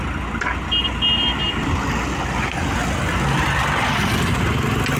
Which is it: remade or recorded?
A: recorded